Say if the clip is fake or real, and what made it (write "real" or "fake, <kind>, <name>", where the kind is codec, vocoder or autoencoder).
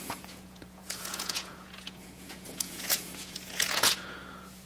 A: fake, vocoder, Vocos